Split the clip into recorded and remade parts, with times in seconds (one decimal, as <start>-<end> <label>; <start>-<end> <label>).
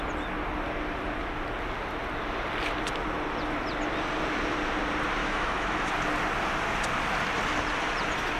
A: 0.0-5.2 recorded; 5.2-5.9 remade; 5.9-8.4 recorded